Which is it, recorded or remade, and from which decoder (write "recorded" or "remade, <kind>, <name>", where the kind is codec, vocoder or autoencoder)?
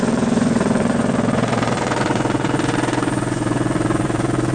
remade, vocoder, Vocos